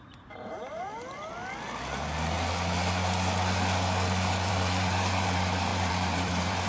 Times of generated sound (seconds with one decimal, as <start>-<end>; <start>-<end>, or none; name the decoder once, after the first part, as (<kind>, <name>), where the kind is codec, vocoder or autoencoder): 0.0-0.9 (vocoder, BigVGAN v2); 4.5-6.7